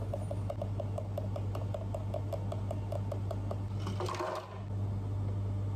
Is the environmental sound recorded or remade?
recorded